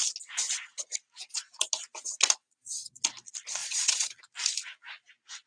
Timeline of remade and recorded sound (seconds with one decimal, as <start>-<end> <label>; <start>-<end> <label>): 0.0-2.4 recorded; 2.4-3.0 remade; 3.0-3.6 recorded; 3.6-4.2 remade; 4.2-5.5 recorded